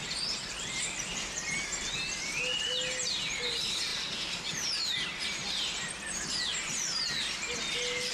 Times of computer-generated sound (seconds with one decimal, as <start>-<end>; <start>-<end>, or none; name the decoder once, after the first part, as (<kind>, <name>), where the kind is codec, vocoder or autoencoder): none